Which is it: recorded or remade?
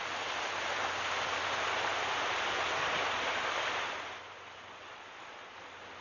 recorded